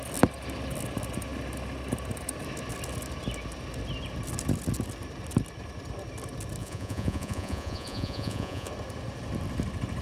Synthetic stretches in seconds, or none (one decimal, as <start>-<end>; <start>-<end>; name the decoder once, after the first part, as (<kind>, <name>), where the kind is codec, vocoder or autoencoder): 6.6-8.7 (vocoder, Vocos)